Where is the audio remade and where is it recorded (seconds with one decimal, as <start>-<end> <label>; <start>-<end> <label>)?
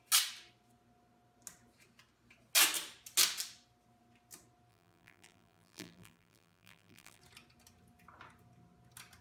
0.0-4.7 recorded; 4.7-7.2 remade; 7.2-9.2 recorded